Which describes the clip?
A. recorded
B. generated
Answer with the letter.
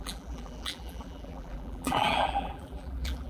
B